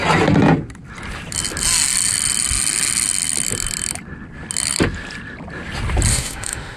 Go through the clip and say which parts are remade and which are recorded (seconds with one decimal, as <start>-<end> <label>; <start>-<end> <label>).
0.0-6.1 recorded; 6.1-6.8 remade